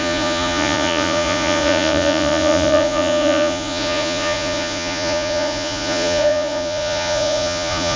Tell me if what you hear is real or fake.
fake